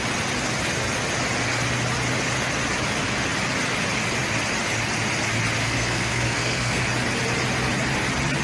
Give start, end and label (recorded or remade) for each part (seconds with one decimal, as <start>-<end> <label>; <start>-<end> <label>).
0.0-5.6 recorded; 5.6-6.8 remade; 6.8-8.4 recorded